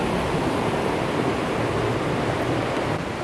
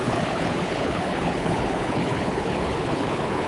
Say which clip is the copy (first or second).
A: second